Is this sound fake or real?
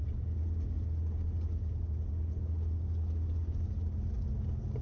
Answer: real